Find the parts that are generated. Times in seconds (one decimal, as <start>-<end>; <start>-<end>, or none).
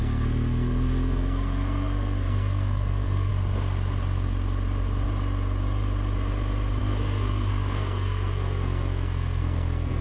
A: 0.0-3.3; 6.8-10.0